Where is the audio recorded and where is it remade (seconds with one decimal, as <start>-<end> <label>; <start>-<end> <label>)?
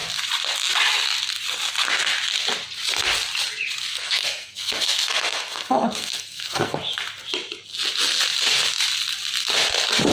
0.0-3.9 recorded; 3.9-6.8 remade; 6.8-10.1 recorded